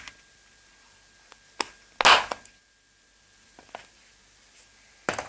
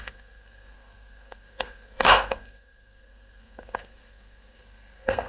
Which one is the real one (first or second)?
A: first